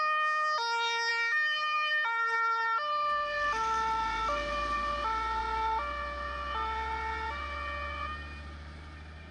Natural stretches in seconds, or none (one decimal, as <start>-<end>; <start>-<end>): 0.0-9.3